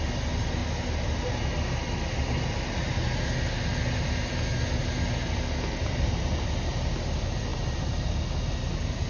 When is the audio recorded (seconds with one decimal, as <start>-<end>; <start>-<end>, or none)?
0.0-7.5; 8.2-9.1